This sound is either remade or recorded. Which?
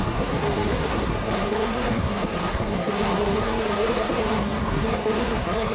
remade